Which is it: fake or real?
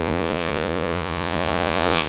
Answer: fake